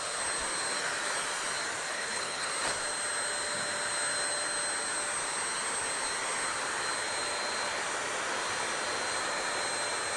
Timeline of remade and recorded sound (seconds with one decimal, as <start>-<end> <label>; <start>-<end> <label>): 0.0-1.9 recorded; 1.9-2.5 remade; 2.5-10.2 recorded